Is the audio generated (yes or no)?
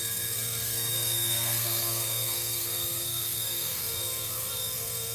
yes